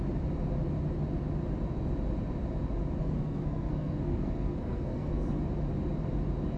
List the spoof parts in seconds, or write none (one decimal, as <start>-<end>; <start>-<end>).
3.0-5.4